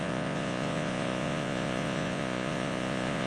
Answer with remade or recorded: remade